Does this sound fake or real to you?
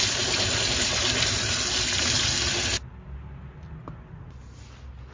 real